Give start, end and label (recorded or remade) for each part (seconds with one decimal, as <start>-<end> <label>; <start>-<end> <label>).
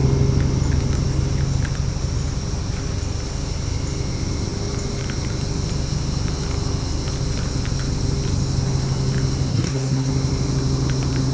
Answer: 0.0-9.5 recorded; 9.5-10.1 remade; 10.1-11.3 recorded